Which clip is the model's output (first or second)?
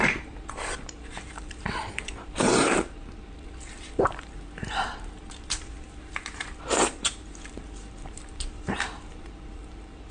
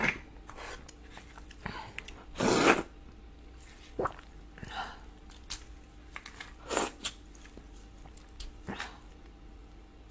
first